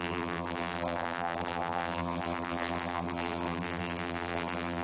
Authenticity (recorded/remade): remade